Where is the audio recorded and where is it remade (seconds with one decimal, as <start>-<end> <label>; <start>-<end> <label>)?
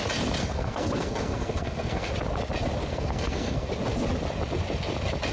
0.0-0.4 recorded; 0.4-2.1 remade; 2.1-2.9 recorded; 2.9-3.7 remade; 3.7-5.3 recorded